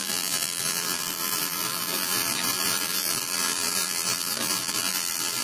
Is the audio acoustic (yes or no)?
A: no